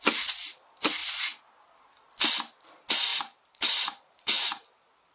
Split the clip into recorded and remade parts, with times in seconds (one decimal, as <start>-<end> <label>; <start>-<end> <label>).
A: 0.0-3.1 recorded; 3.1-5.1 remade